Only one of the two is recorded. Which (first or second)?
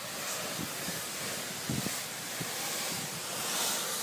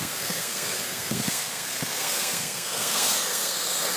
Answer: first